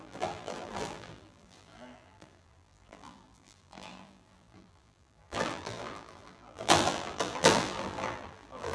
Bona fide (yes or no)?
no